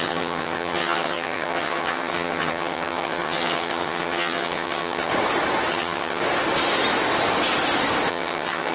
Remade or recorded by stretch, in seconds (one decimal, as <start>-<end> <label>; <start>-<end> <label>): 0.0-5.1 remade; 5.1-5.7 recorded; 5.7-6.2 remade; 6.2-8.1 recorded; 8.1-8.7 remade